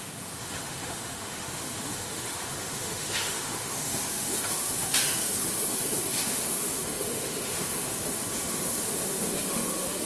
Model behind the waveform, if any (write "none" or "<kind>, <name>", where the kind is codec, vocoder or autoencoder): autoencoder, DAC-VAE